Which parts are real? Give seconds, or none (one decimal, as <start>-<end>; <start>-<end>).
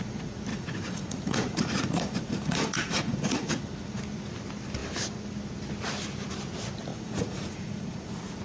0.0-0.5; 3.5-6.9